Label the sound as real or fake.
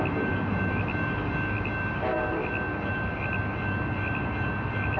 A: real